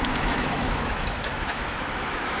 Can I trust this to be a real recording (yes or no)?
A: no